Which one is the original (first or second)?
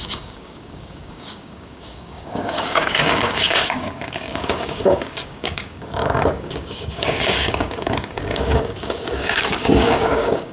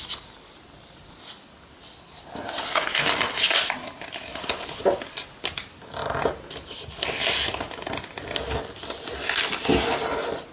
second